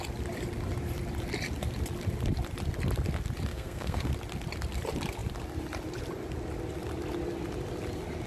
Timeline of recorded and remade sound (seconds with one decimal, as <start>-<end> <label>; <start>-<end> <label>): 0.0-3.5 recorded; 3.5-4.1 remade; 4.1-8.3 recorded